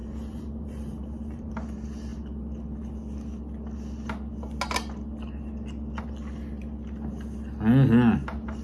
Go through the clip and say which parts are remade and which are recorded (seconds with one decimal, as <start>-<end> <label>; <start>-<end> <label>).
0.0-1.5 remade; 1.5-8.6 recorded